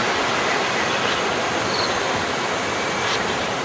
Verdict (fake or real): real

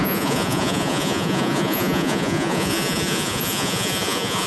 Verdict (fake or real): fake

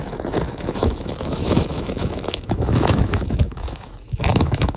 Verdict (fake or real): fake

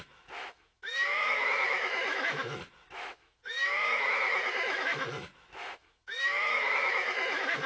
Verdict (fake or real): fake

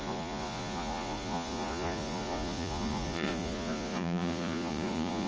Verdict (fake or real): fake